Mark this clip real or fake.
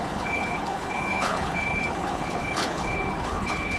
fake